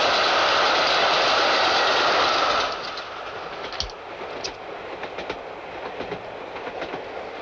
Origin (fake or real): real